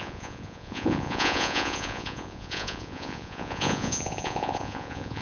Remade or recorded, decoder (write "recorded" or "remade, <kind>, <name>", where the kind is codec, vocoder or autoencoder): remade, vocoder, Vocos